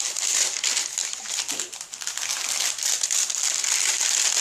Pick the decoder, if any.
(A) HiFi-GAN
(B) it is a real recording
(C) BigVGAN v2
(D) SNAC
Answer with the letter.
B